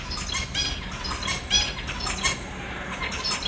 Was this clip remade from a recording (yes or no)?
no